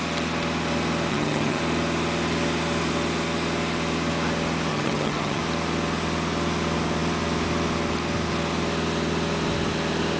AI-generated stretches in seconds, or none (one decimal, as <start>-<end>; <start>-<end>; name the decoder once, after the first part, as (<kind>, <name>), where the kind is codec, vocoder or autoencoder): 1.1-1.6 (vocoder, HiFi-GAN); 4.7-5.4